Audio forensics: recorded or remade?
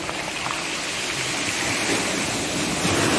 recorded